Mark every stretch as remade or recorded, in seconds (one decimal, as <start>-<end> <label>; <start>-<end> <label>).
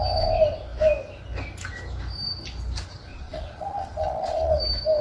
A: 0.0-3.1 recorded; 3.1-4.6 remade; 4.6-5.0 recorded